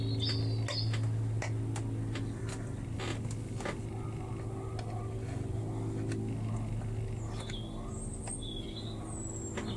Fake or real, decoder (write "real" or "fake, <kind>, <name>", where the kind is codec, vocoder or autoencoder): real